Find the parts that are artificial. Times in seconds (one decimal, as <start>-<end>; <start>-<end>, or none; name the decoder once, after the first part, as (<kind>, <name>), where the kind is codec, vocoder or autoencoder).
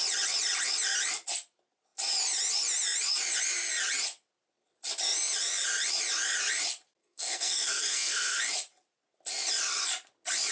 7.0-8.4 (codec, SNAC)